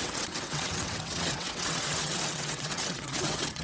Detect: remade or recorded remade